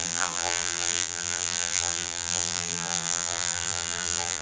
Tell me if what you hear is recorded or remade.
remade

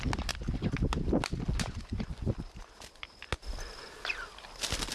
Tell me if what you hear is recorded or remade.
recorded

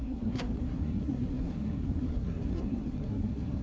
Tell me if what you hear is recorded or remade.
remade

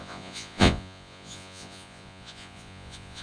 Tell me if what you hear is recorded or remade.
remade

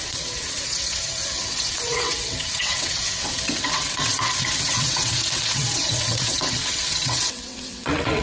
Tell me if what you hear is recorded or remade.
remade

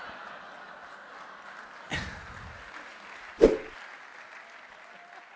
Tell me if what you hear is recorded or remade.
recorded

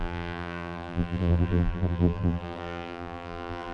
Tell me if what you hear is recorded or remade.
remade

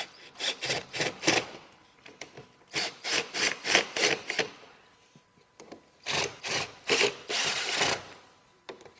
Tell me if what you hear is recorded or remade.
remade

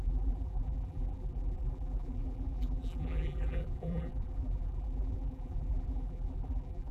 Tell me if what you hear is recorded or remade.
remade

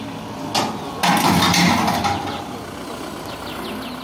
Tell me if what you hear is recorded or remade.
recorded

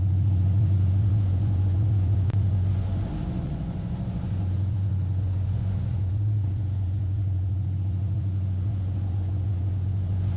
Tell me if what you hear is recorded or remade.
remade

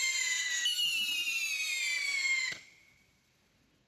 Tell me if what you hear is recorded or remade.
recorded